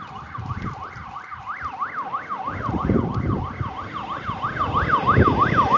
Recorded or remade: recorded